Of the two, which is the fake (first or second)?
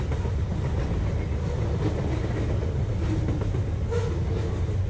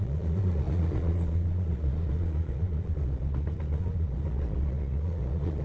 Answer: second